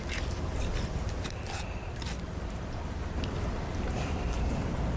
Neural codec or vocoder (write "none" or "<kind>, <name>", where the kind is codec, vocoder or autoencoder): vocoder, BigVGAN v2